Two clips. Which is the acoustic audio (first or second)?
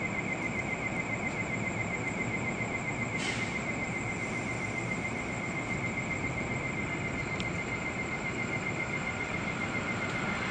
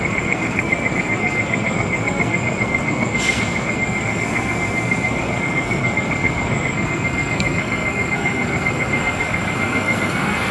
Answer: first